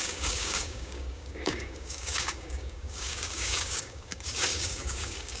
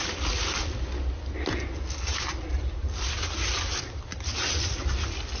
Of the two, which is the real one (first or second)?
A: second